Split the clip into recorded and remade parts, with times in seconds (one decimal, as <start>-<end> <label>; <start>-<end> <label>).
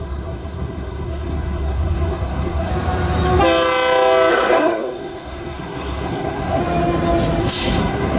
0.0-2.7 remade; 2.7-4.3 recorded; 4.3-6.6 remade; 6.6-7.4 recorded; 7.4-8.2 remade